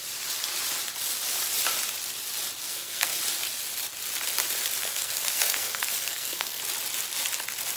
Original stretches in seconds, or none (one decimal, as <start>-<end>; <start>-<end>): 0.0-2.6; 3.2-4.8; 6.6-7.8